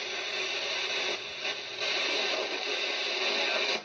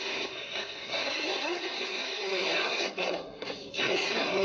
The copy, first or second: second